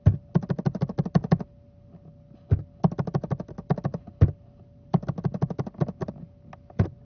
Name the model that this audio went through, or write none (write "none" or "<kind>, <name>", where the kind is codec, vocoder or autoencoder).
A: none